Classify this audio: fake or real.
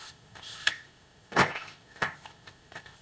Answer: fake